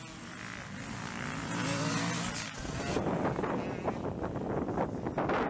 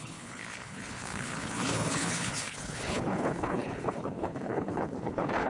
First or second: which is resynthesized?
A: second